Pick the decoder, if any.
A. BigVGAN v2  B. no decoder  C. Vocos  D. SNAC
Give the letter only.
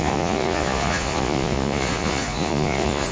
C